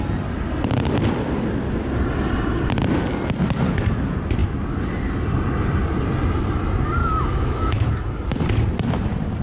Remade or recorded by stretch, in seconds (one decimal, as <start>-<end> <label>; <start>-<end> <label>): 0.0-7.0 recorded; 7.0-7.9 remade; 7.9-9.4 recorded